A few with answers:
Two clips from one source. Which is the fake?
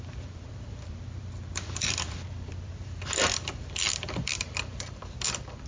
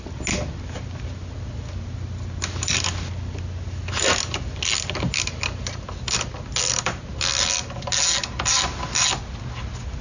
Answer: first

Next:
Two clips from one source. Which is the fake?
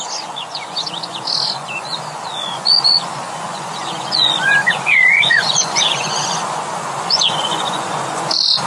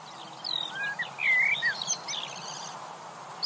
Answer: first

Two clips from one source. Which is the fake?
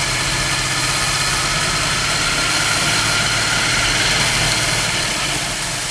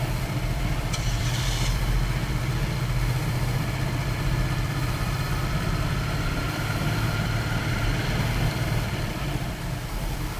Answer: second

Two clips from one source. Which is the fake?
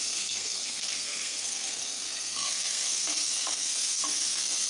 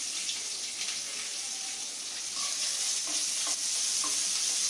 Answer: first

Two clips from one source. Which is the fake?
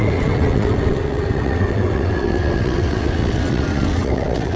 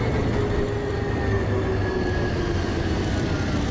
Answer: first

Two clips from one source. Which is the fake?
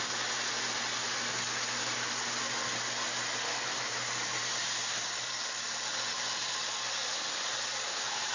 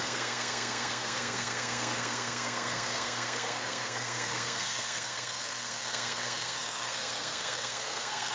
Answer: second